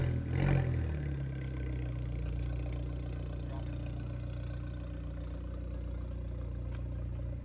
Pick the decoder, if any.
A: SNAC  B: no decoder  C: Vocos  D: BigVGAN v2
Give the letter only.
B